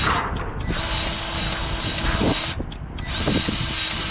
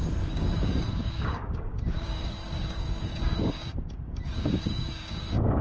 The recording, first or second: first